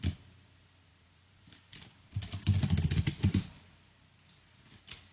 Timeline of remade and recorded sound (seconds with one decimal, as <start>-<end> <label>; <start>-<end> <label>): 0.0-0.9 recorded; 0.9-3.6 remade; 3.6-5.1 recorded